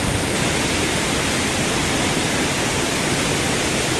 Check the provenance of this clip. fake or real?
real